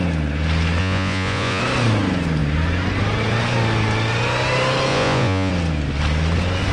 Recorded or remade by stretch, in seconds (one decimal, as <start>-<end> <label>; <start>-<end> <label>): 0.0-0.8 recorded; 0.8-1.6 remade; 1.6-4.9 recorded; 4.9-5.5 remade; 5.5-6.7 recorded